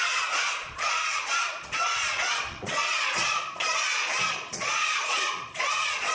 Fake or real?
fake